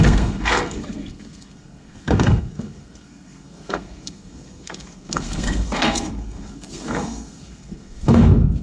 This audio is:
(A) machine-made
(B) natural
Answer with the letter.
A